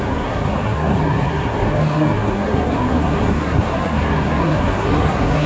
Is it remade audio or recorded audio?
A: remade